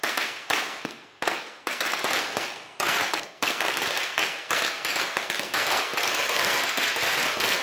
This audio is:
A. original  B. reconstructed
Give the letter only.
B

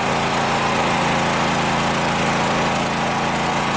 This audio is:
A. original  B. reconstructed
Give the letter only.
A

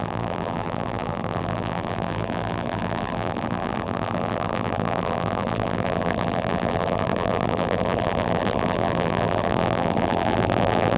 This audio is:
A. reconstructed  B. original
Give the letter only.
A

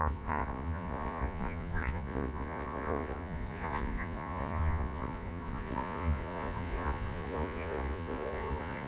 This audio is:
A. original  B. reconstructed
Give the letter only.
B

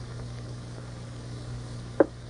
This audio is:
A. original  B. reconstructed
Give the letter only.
B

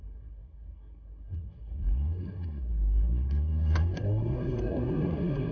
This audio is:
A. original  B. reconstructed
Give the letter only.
B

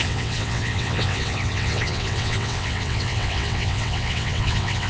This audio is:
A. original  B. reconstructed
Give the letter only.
B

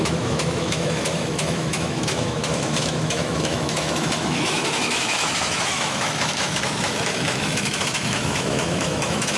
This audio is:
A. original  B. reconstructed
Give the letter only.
B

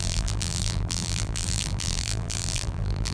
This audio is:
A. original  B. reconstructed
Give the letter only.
B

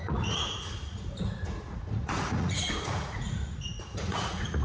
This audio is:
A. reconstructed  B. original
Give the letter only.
A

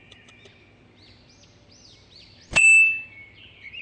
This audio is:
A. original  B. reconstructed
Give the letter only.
A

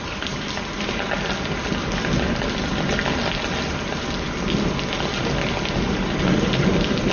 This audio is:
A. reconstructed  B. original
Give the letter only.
B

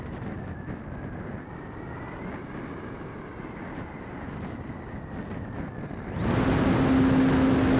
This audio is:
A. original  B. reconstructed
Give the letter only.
A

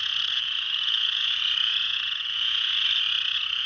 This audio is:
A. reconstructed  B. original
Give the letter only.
A